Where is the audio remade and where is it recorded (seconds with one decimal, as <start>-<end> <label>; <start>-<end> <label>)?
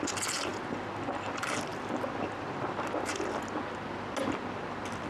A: 0.0-5.1 recorded